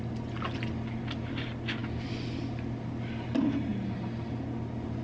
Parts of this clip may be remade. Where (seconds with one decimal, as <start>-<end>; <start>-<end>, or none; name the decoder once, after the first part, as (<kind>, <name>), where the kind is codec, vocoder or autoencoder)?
none